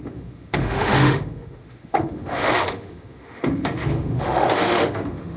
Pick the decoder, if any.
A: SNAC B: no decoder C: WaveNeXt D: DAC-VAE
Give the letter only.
D